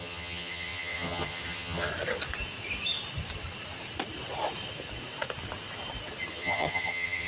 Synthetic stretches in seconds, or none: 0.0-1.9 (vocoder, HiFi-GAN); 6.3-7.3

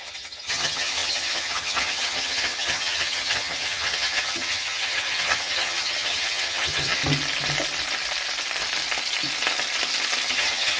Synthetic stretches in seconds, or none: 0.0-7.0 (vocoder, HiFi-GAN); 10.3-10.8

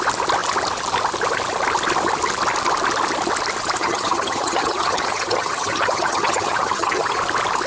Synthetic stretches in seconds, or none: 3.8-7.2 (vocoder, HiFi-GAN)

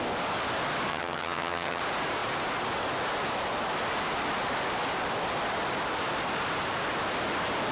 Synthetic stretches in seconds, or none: 0.9-1.8 (vocoder, HiFi-GAN)